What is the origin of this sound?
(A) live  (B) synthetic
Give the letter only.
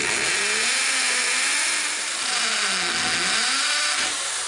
A